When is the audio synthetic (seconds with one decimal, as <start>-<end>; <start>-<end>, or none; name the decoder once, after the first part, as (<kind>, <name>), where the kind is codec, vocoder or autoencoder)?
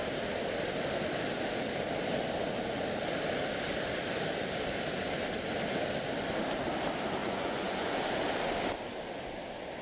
7.2-8.0 (vocoder, Vocos)